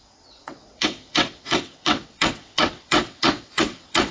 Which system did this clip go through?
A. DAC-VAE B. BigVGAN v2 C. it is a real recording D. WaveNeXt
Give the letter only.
D